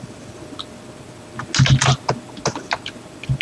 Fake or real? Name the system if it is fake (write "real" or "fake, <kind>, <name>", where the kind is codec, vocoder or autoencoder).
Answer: real